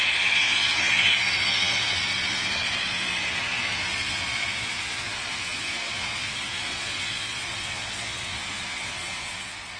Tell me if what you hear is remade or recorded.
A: remade